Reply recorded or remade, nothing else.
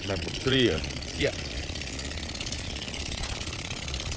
remade